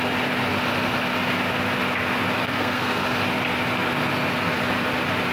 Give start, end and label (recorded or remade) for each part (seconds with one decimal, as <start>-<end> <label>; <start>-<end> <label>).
0.0-2.4 recorded; 2.4-3.0 remade; 3.0-5.3 recorded